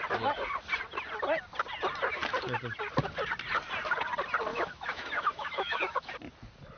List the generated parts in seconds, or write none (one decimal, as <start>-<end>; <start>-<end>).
4.5-6.1